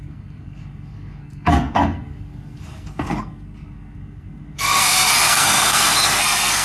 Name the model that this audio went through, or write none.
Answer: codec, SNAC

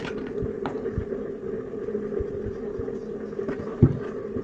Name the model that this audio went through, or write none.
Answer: none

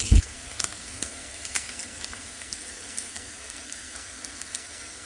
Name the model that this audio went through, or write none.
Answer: codec, SNAC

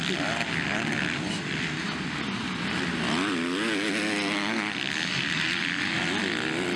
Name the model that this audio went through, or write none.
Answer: none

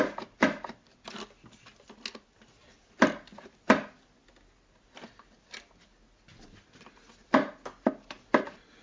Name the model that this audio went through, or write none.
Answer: none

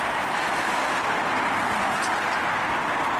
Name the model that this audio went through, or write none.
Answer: none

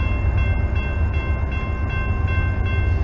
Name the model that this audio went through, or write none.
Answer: none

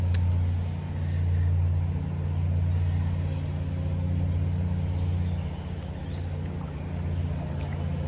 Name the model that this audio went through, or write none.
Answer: none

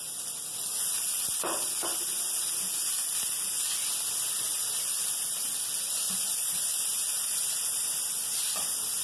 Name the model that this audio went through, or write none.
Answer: none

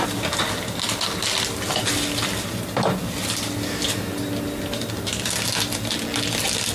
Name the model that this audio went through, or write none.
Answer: none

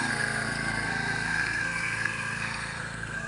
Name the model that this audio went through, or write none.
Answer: codec, SNAC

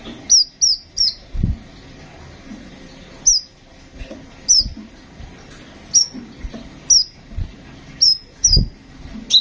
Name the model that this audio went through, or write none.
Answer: none